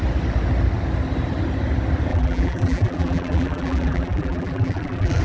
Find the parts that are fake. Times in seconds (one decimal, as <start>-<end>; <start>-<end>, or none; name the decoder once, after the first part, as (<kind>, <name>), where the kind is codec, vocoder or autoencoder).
2.1-5.2 (vocoder, BigVGAN v2)